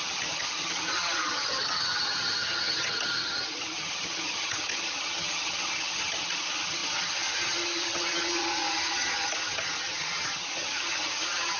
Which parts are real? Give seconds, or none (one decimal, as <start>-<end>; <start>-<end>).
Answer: none